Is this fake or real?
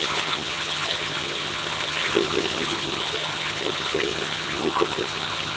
fake